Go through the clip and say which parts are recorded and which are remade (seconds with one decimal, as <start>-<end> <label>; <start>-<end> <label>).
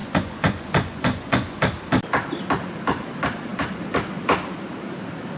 0.0-1.6 remade; 1.6-5.4 recorded